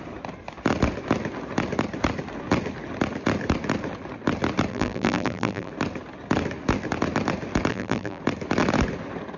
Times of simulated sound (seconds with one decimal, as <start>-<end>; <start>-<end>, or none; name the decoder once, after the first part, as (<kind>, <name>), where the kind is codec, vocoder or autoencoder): 4.7-5.7 (vocoder, BigVGAN v2); 7.7-8.2